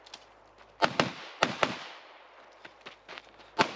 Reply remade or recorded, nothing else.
recorded